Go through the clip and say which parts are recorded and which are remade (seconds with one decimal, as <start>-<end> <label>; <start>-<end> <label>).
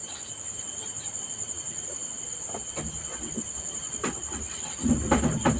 0.0-5.6 recorded